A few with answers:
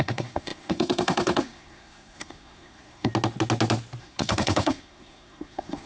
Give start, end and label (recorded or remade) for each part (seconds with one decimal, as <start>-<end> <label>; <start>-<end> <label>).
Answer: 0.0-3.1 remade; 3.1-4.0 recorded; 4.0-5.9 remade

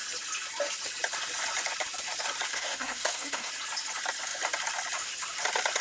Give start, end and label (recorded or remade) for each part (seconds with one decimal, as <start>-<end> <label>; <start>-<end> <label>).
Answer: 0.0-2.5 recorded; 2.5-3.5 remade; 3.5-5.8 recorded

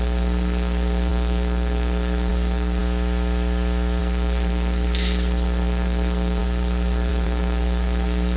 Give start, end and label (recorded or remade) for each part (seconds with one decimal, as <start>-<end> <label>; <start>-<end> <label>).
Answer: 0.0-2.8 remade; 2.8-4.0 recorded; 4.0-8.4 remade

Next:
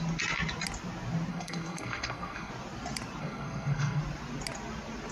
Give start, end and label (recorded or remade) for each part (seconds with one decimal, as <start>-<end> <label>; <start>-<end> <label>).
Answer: 0.0-1.3 recorded; 1.3-2.5 remade; 2.5-3.2 recorded; 3.2-4.0 remade; 4.0-5.1 recorded